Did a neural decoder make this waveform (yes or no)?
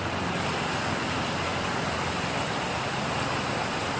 no